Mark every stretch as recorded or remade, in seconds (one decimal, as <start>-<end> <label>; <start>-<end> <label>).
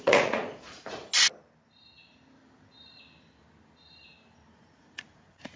0.0-1.1 remade; 1.1-4.5 recorded; 4.5-5.6 remade